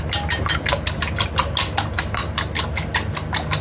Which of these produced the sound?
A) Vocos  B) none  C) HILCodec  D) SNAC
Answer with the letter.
B